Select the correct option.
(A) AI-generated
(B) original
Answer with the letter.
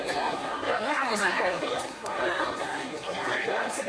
A